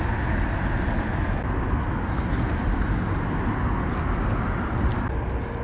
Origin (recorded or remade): recorded